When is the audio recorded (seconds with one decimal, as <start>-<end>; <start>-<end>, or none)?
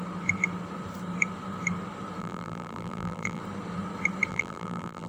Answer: 0.0-2.2; 3.4-4.3